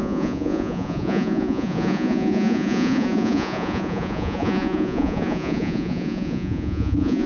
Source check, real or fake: fake